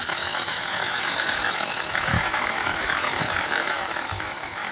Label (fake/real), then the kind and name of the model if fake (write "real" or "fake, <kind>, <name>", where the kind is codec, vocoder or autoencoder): fake, autoencoder, DAC-VAE